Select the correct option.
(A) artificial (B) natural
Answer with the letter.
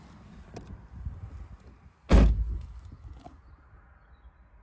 B